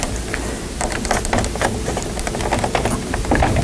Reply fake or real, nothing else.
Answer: real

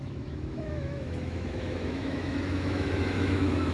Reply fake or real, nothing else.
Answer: fake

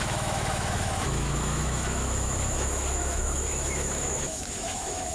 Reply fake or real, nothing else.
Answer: fake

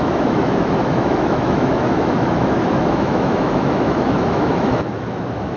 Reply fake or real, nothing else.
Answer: fake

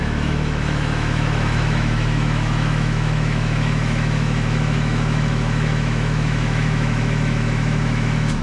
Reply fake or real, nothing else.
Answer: fake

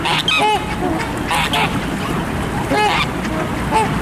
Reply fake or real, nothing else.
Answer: real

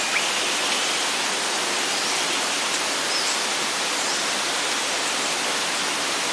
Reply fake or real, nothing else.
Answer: real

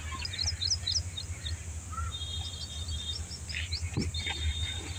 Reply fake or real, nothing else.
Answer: real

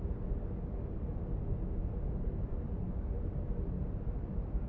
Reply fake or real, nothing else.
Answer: real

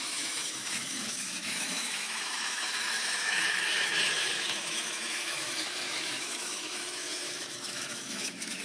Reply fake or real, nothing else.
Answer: fake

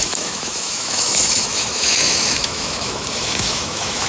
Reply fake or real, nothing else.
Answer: fake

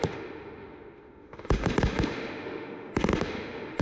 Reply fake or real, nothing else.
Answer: fake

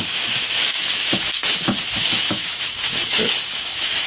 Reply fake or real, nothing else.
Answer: fake